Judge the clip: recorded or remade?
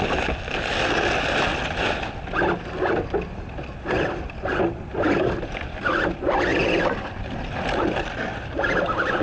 recorded